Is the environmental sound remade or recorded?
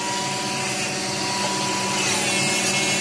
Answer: recorded